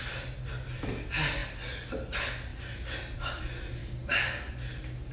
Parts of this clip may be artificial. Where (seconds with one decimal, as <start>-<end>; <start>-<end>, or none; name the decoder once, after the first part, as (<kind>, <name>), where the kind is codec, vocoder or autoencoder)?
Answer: 3.8-4.5 (codec, DAC)